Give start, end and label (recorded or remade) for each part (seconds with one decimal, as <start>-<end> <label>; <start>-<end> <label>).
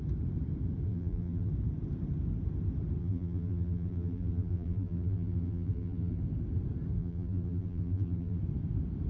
0.0-0.9 recorded; 0.9-1.5 remade; 1.5-3.0 recorded; 3.0-6.2 remade; 6.2-7.0 recorded; 7.0-8.4 remade; 8.4-9.1 recorded